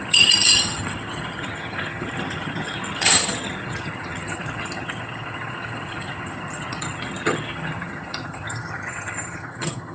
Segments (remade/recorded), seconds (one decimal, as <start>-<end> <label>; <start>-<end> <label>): 0.0-9.9 remade